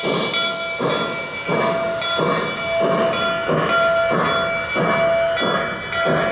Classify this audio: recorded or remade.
recorded